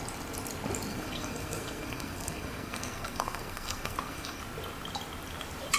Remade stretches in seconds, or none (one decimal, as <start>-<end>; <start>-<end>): 0.9-4.4